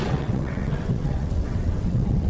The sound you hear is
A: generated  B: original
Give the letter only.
A